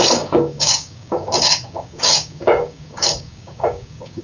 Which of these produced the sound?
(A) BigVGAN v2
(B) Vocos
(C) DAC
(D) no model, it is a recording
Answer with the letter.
C